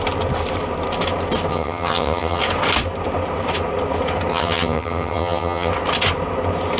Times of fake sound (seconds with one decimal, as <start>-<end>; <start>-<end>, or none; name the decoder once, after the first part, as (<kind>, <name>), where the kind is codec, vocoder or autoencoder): 1.5-2.4 (vocoder, HiFi-GAN); 4.3-5.7